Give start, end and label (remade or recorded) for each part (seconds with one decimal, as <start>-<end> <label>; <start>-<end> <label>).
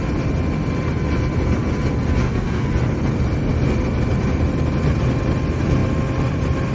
0.0-2.2 recorded; 2.2-2.7 remade; 2.7-6.7 recorded